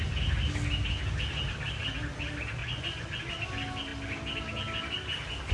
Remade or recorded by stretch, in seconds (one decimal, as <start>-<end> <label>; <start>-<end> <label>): 0.0-2.6 recorded; 2.6-3.2 remade; 3.2-5.5 recorded